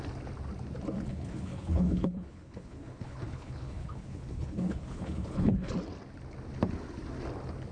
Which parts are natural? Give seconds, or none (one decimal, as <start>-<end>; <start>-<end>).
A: 0.0-1.1; 5.7-7.7